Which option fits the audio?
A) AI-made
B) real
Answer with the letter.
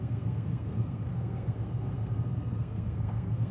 A